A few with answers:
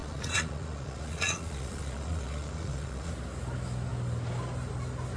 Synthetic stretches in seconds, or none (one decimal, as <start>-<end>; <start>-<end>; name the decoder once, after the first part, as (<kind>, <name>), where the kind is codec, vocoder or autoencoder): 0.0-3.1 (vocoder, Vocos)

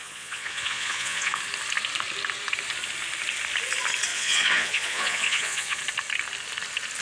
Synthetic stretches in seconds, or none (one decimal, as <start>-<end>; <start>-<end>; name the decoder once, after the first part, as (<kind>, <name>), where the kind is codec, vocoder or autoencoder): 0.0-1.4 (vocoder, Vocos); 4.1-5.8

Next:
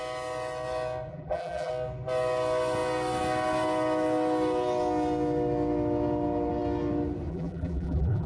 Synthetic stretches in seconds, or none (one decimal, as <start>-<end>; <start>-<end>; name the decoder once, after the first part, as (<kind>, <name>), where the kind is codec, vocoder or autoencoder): 1.1-1.7 (vocoder, BigVGAN v2); 7.3-8.3

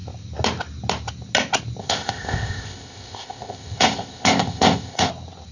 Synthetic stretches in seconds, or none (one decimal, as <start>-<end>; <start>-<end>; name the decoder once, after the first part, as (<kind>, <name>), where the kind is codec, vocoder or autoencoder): 1.8-5.1 (codec, ZipCodec)

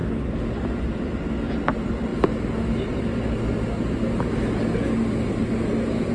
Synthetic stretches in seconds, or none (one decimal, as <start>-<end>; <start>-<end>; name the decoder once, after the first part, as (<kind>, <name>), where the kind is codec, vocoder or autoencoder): none

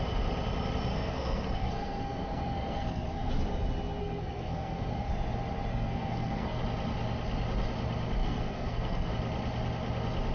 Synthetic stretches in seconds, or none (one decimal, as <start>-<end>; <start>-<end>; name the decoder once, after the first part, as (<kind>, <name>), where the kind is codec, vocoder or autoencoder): 0.9-3.3 (codec, SNAC); 4.0-5.1; 5.7-6.6; 8.2-9.1